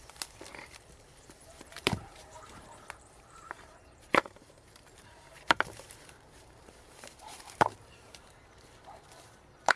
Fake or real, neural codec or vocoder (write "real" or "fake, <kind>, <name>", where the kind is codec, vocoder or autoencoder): fake, vocoder, BigVGAN v2